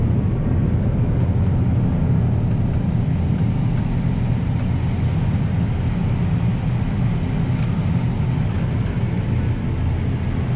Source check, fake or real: real